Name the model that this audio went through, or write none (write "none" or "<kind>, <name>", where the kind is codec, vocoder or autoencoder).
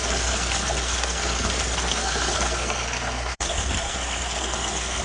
codec, SNAC